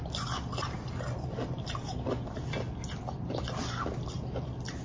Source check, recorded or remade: recorded